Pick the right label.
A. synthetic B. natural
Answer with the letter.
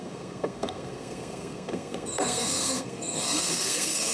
A